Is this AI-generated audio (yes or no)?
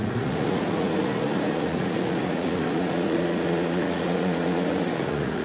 yes